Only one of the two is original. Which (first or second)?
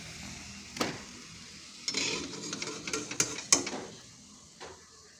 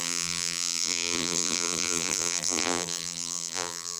first